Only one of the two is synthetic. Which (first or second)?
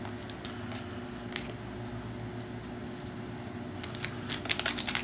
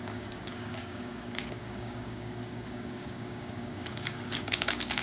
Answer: second